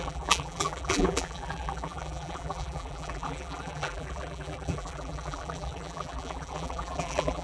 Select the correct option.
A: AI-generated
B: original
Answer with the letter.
A